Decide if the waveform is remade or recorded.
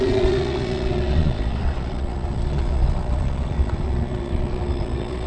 remade